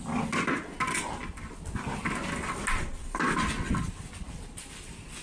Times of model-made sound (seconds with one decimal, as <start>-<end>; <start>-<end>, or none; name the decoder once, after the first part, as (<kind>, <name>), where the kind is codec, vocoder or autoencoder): none

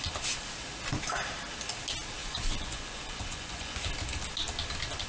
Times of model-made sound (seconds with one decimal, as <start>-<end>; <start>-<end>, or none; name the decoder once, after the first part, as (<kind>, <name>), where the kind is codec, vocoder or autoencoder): 2.2-3.9 (vocoder, Vocos)

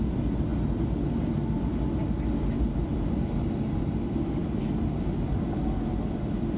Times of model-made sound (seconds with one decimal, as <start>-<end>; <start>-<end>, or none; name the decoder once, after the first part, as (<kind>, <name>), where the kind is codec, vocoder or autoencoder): none

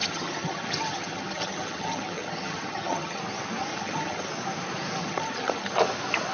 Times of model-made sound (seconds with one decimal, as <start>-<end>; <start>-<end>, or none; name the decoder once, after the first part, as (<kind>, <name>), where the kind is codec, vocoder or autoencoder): 0.0-3.2 (vocoder, HiFi-GAN); 3.7-4.3; 5.0-5.7

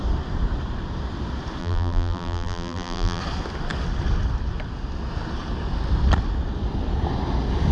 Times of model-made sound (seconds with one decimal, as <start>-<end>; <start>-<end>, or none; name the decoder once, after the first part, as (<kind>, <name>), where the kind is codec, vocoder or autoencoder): 1.6-3.2 (vocoder, BigVGAN v2)

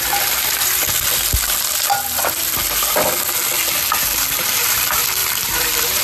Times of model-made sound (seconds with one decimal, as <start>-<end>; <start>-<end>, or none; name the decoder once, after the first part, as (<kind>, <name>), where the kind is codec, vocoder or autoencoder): 0.0-0.8 (vocoder, BigVGAN v2); 4.4-6.0

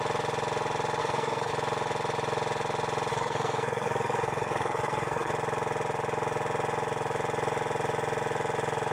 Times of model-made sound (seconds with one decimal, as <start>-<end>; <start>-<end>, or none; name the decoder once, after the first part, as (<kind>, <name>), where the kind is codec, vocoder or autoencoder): 1.0-1.5 (codec, SNAC); 3.1-5.3